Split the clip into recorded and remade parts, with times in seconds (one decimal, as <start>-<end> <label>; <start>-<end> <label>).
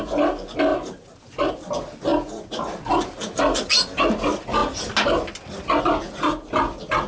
0.0-7.1 recorded